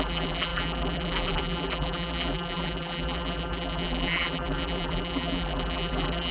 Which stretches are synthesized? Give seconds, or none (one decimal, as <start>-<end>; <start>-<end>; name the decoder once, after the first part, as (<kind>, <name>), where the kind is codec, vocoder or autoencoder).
0.0-6.3 (vocoder, BigVGAN v2)